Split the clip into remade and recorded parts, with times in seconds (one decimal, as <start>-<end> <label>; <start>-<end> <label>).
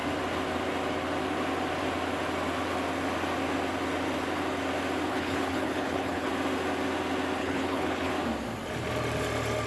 0.0-5.1 recorded; 5.1-6.3 remade; 6.3-7.4 recorded; 7.4-8.1 remade; 8.1-9.7 recorded